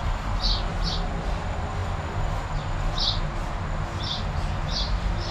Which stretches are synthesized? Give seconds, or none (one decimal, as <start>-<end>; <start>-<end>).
none